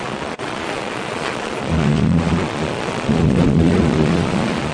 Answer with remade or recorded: remade